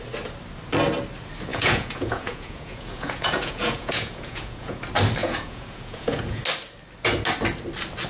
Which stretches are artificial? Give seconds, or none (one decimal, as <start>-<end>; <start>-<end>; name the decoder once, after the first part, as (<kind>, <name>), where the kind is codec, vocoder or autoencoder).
1.5-4.8 (vocoder, Vocos); 5.2-6.4